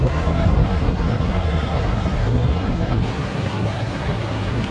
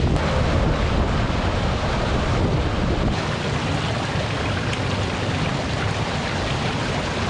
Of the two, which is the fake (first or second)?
first